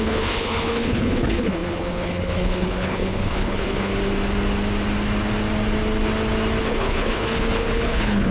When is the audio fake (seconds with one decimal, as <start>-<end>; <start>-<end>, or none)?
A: 0.0-3.9; 6.6-8.3